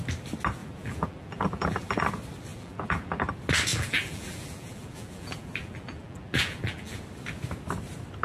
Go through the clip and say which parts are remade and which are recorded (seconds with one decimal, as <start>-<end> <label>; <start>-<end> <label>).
0.0-0.6 recorded; 0.6-2.0 remade; 2.0-2.5 recorded; 2.5-3.3 remade; 3.3-3.7 recorded; 3.7-7.0 remade; 7.0-8.2 recorded